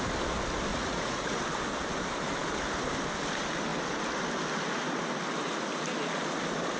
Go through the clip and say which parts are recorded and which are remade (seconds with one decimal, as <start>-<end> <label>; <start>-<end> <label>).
0.0-0.7 recorded; 0.7-1.4 remade; 1.4-6.8 recorded